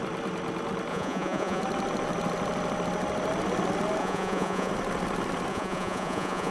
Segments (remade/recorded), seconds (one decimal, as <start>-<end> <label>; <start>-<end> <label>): 0.0-0.9 recorded; 0.9-1.6 remade; 1.6-4.0 recorded; 4.0-4.7 remade; 4.7-5.5 recorded; 5.5-6.5 remade

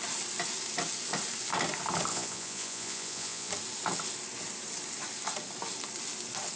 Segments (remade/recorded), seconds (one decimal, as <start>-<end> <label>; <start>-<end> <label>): 0.0-2.1 recorded; 2.1-3.5 remade; 3.5-6.6 recorded

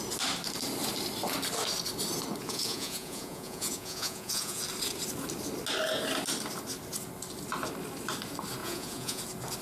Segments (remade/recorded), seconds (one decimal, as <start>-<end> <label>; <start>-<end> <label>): 0.0-2.4 recorded; 2.4-4.6 remade; 4.6-8.6 recorded; 8.6-9.2 remade; 9.2-9.6 recorded